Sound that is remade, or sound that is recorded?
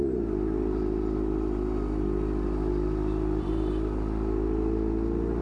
recorded